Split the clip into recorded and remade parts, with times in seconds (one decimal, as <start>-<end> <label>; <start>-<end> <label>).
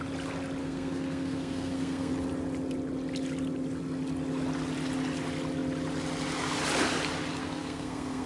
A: 0.0-0.6 recorded; 0.6-2.1 remade; 2.1-7.4 recorded; 7.4-8.3 remade